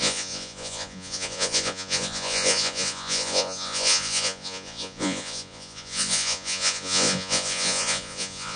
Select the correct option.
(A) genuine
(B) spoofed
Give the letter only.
B